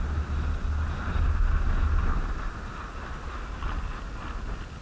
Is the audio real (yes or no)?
yes